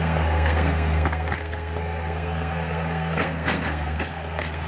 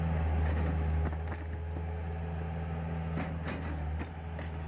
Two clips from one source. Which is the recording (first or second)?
second